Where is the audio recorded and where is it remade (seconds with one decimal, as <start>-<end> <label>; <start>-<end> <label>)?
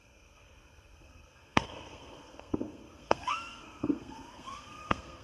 0.0-5.2 remade